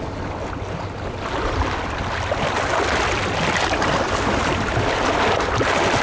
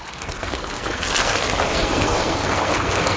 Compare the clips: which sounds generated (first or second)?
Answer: second